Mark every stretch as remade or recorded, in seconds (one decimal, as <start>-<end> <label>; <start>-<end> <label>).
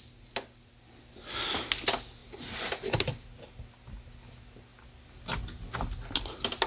0.0-6.7 recorded